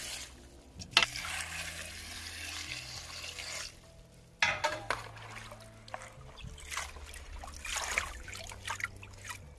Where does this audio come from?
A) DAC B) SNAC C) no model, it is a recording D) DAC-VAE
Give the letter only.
C